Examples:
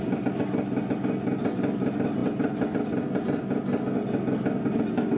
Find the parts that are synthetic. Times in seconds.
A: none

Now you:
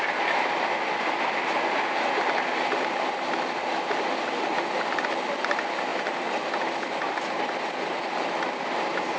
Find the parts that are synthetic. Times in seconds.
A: none

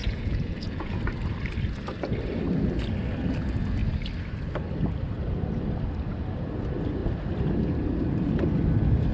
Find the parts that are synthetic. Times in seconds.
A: 0.0-1.0 (vocoder, Vocos)

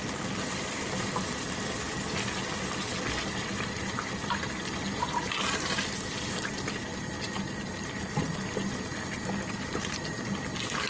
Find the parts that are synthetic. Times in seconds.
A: none

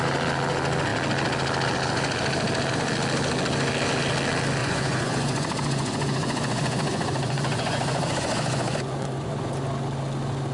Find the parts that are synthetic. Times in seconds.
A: 4.6-9.4 (vocoder, Vocos)

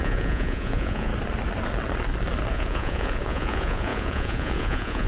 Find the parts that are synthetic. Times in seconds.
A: 0.0-1.1 (vocoder, Vocos); 2.5-5.1